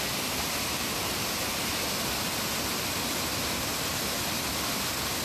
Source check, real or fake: real